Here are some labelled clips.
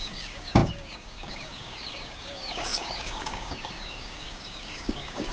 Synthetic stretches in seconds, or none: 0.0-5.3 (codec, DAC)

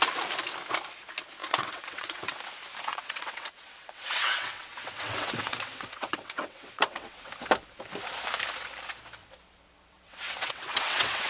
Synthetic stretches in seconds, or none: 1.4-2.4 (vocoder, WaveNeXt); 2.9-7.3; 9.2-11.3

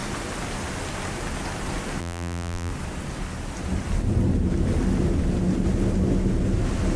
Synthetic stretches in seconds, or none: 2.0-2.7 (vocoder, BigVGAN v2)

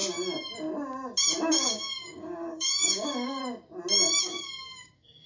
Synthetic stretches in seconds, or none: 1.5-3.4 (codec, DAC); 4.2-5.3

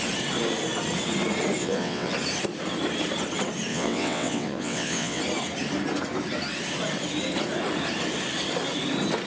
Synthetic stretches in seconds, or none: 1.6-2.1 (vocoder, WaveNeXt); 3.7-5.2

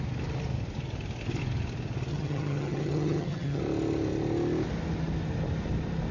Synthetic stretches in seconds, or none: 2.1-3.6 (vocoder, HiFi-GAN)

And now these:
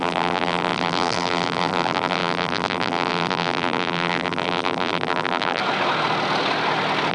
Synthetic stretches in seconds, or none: 0.0-5.6 (vocoder, BigVGAN v2)

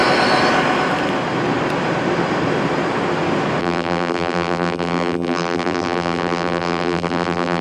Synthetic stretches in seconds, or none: 3.6-7.6 (vocoder, BigVGAN v2)